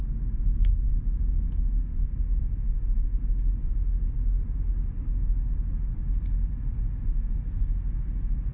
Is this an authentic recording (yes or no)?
yes